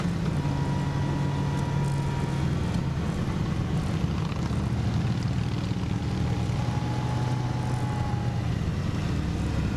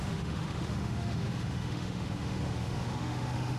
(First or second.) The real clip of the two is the first